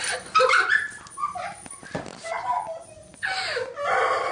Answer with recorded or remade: recorded